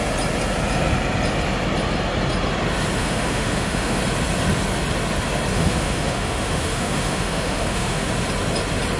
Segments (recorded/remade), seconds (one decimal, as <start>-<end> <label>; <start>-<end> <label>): 0.0-3.0 recorded; 3.0-4.0 remade; 4.0-5.5 recorded; 5.5-8.1 remade; 8.1-9.0 recorded